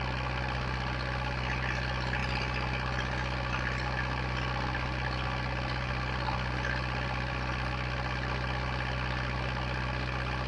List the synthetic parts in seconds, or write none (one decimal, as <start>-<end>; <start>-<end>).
none